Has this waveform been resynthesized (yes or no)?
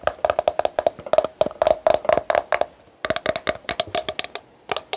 no